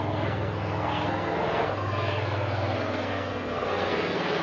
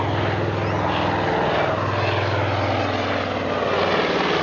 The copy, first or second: first